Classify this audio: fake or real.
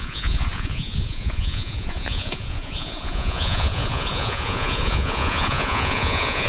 fake